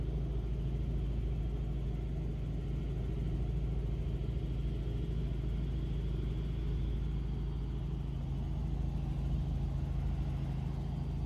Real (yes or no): yes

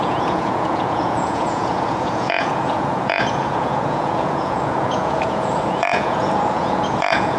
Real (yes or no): no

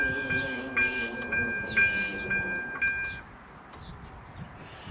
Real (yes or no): yes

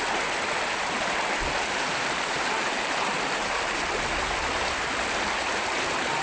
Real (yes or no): yes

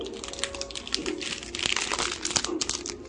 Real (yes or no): yes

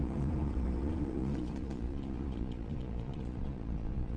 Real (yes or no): no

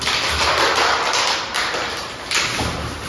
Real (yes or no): yes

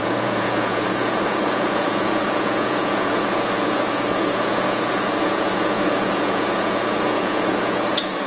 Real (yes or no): no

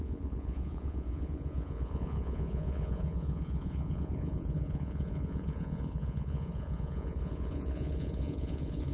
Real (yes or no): no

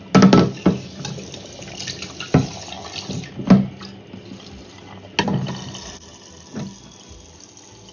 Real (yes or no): yes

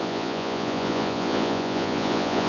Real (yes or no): no